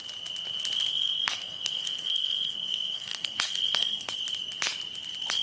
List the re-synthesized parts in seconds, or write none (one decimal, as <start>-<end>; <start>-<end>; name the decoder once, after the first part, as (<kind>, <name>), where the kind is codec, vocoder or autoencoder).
0.9-4.1 (codec, SNAC)